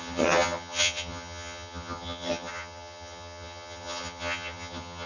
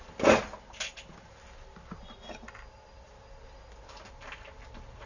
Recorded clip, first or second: second